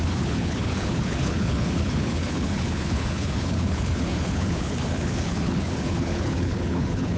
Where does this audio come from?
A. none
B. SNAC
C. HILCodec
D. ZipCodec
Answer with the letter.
C